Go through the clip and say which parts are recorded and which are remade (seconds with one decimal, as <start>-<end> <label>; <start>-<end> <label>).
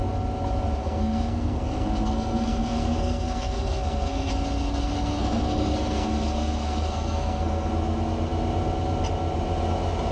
0.0-0.8 recorded; 0.8-4.3 remade; 4.3-4.8 recorded; 4.8-7.7 remade; 7.7-10.1 recorded